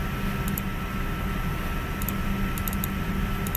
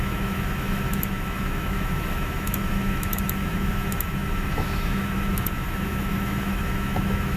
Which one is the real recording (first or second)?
first